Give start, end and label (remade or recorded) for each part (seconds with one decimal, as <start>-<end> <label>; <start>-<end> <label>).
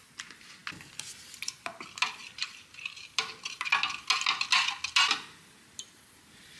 0.0-6.6 recorded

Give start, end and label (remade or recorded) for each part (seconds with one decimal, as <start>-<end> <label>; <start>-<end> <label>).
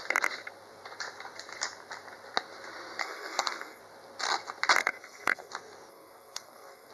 0.0-3.0 recorded; 3.0-3.8 remade; 3.8-4.8 recorded; 4.8-5.5 remade; 5.5-5.9 recorded; 5.9-6.9 remade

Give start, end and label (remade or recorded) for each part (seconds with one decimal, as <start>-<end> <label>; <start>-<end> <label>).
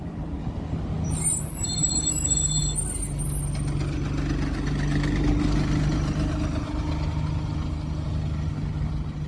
0.0-9.3 recorded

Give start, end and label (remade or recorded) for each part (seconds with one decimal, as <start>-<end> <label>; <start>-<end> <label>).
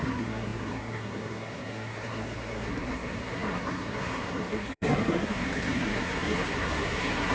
0.0-7.3 remade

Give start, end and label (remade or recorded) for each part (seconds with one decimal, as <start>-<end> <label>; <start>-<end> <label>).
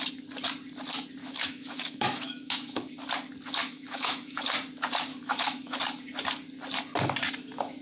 0.0-1.2 recorded; 1.2-2.9 remade; 2.9-3.6 recorded; 3.6-4.4 remade; 4.4-5.1 recorded; 5.1-5.8 remade; 5.8-7.8 recorded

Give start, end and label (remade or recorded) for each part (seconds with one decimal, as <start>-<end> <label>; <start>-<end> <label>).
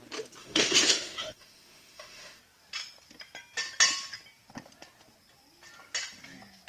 0.0-0.4 recorded; 0.4-2.4 remade; 2.4-6.7 recorded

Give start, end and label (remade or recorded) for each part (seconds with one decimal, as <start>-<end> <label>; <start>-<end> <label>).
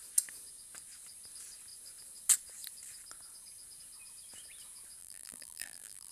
0.0-5.0 recorded; 5.0-6.1 remade